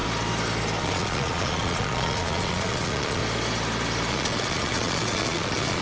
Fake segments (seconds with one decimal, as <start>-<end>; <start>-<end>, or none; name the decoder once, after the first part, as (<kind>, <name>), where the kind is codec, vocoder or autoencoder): 0.8-3.2 (vocoder, Vocos); 4.1-5.8